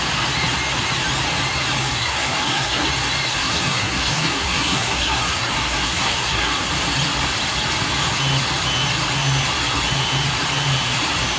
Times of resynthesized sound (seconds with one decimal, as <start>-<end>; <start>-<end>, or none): 1.8-2.9; 3.3-6.7